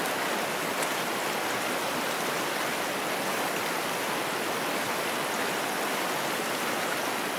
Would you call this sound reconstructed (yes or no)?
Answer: no